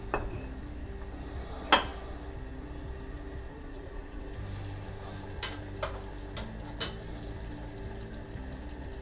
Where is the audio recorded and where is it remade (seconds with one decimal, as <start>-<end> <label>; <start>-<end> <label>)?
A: 0.0-3.5 recorded; 3.5-4.2 remade; 4.2-9.0 recorded